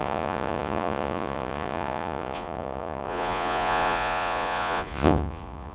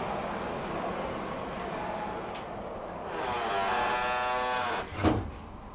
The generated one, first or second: first